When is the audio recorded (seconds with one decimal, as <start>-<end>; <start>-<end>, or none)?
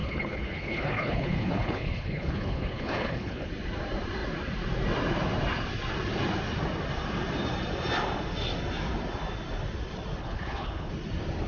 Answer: 3.5-10.2; 10.9-11.5